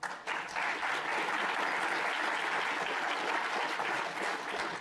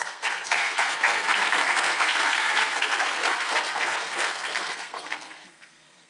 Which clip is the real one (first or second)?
first